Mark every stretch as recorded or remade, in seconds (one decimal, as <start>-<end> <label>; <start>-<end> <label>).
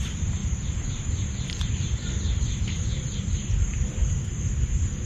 0.0-4.0 remade; 4.0-4.6 recorded; 4.6-5.1 remade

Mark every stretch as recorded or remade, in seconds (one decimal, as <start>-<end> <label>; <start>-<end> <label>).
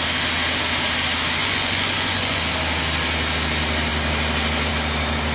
0.0-1.4 recorded; 1.4-2.4 remade; 2.4-5.3 recorded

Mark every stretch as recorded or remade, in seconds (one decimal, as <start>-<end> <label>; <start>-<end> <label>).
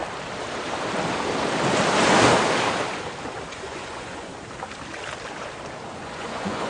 0.0-3.5 recorded; 3.5-4.3 remade; 4.3-6.0 recorded; 6.0-6.7 remade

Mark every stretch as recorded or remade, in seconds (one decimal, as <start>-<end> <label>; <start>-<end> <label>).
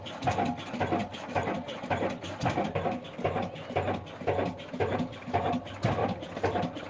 0.0-6.0 recorded; 6.0-6.9 remade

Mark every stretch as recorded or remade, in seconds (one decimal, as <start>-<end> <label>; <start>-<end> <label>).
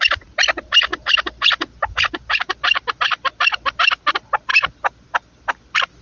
0.0-6.0 recorded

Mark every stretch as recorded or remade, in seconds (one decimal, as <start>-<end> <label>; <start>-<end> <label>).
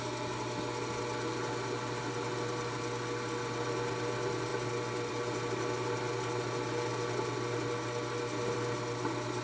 0.0-9.4 recorded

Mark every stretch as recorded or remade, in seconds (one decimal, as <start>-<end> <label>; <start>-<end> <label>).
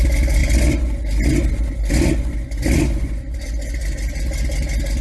0.0-5.0 recorded